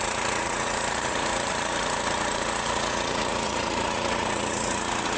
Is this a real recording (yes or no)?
no